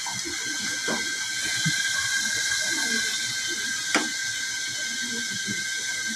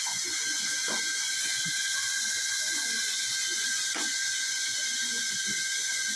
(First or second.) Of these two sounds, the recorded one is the first